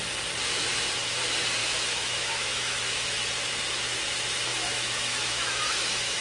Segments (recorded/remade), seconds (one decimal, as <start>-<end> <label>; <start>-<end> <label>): 0.0-1.6 recorded; 1.6-3.3 remade; 3.3-4.5 recorded; 4.5-6.2 remade